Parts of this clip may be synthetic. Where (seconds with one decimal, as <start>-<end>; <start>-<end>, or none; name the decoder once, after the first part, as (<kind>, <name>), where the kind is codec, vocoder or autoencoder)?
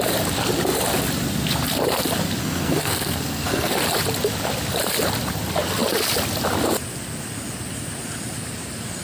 2.4-3.7 (codec, SNAC)